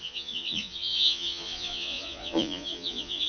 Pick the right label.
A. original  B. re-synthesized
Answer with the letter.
B